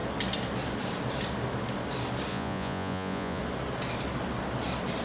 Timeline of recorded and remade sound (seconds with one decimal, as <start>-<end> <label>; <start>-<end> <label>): 0.0-2.3 recorded; 2.3-3.4 remade; 3.4-5.0 recorded